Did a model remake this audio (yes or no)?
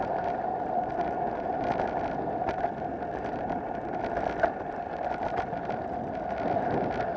no